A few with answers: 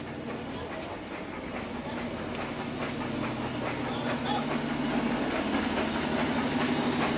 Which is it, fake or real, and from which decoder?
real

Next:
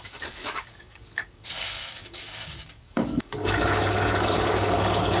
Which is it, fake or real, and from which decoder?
fake, codec, DAC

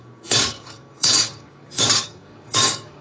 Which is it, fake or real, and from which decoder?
fake, codec, DAC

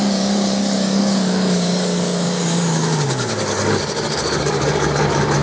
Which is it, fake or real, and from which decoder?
fake, codec, DAC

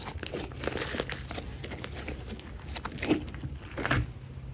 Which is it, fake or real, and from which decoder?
real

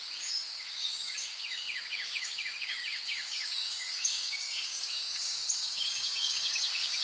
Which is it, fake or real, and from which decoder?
fake, codec, DAC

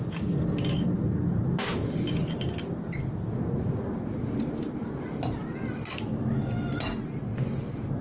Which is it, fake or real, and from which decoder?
real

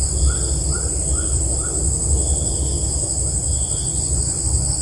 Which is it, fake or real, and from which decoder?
real